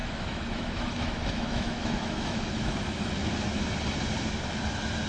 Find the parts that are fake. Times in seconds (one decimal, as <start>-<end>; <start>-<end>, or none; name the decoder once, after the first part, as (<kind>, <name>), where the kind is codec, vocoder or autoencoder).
0.0-3.1 (autoencoder, DAC-VAE)